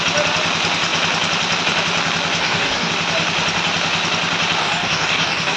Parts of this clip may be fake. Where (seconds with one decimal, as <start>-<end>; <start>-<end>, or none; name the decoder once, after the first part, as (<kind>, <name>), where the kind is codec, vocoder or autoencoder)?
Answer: 2.4-2.9 (codec, DAC); 4.6-5.6